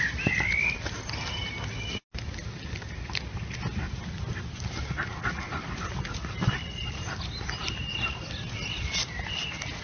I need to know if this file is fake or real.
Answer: real